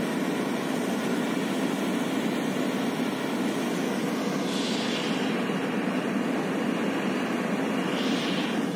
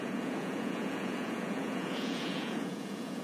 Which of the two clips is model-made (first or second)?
second